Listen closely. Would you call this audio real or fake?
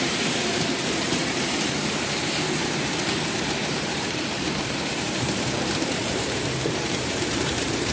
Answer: fake